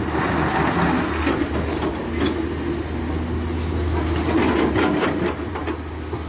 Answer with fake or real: real